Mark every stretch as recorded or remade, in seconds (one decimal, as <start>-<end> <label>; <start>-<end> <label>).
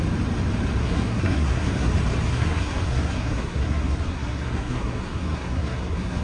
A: 0.0-0.8 recorded; 0.8-1.9 remade; 1.9-2.3 recorded; 2.3-6.2 remade